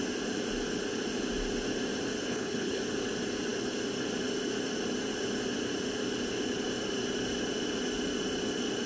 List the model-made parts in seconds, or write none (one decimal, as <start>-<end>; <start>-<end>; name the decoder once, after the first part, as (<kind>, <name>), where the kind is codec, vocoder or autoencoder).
2.2-2.8 (codec, HILCodec)